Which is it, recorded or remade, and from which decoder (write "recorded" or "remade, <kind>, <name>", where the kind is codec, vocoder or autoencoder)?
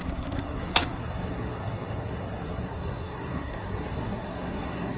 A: remade, codec, SNAC